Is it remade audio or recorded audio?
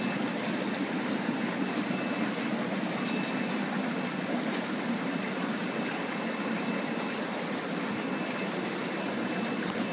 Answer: recorded